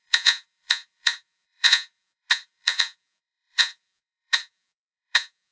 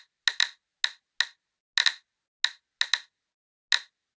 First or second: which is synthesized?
first